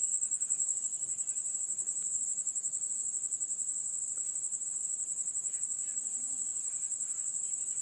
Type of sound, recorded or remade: recorded